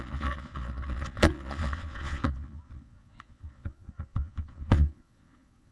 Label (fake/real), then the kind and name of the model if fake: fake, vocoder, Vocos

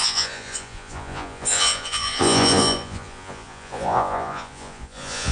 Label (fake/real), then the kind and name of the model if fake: fake, vocoder, Vocos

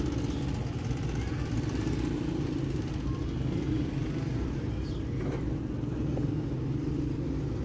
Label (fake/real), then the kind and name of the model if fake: real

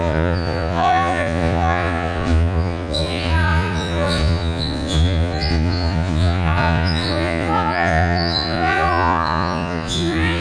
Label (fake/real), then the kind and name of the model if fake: fake, vocoder, Vocos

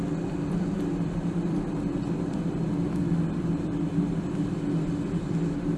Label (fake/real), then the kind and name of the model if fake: real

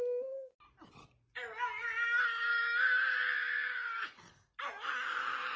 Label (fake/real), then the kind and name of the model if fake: real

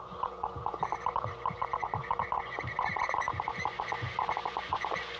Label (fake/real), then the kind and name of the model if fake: fake, vocoder, Vocos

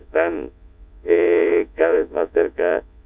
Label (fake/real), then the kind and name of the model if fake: fake, vocoder, Vocos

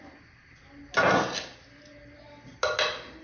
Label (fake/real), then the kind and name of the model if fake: real